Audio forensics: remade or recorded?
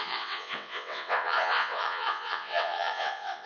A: remade